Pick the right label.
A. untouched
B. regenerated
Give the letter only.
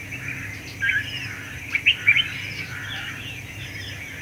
A